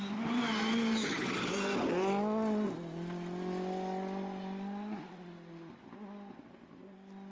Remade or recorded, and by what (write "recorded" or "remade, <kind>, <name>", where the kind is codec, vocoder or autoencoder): recorded